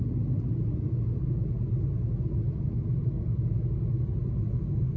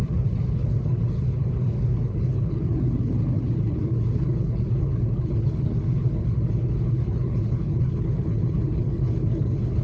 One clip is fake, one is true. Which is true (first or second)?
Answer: first